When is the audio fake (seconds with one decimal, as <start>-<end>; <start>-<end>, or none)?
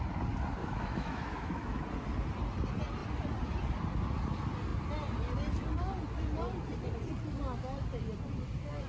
0.6-1.8